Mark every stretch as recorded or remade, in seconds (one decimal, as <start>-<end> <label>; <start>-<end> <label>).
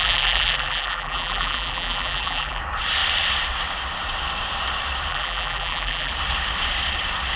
0.0-2.6 remade; 2.6-5.1 recorded; 5.1-6.1 remade; 6.1-7.4 recorded